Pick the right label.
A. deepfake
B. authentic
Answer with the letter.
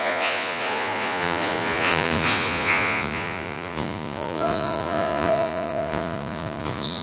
A